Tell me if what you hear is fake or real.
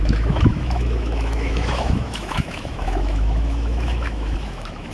fake